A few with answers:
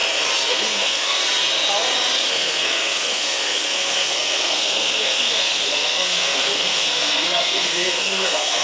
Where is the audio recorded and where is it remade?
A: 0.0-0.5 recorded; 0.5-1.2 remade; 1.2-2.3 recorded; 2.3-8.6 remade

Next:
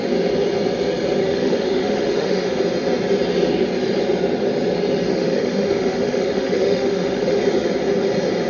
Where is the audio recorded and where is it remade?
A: 0.0-1.2 recorded; 1.2-2.6 remade; 2.6-5.1 recorded; 5.1-7.4 remade; 7.4-8.5 recorded

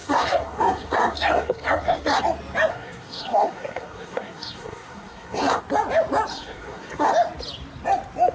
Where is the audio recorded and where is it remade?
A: 0.0-2.2 remade; 2.2-2.7 recorded; 2.7-5.6 remade; 5.6-6.3 recorded; 6.3-7.1 remade; 7.1-8.3 recorded

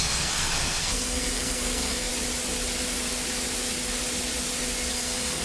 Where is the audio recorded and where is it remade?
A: 0.0-2.1 remade; 2.1-4.9 recorded; 4.9-5.4 remade

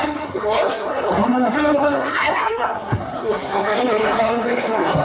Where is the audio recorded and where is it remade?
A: 0.0-5.0 remade

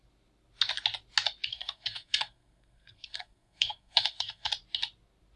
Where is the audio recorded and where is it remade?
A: 0.0-1.5 recorded; 1.5-4.5 remade; 4.5-5.4 recorded

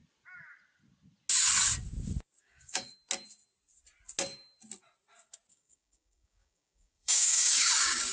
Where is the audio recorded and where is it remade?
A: 0.0-2.4 recorded; 2.4-2.9 remade; 2.9-5.5 recorded; 5.5-8.1 remade

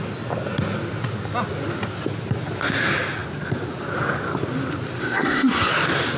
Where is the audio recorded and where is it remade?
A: 0.0-5.0 recorded; 5.0-5.7 remade; 5.7-6.2 recorded